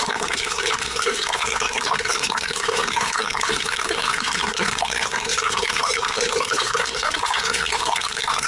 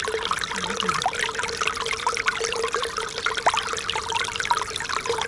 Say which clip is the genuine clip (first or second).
second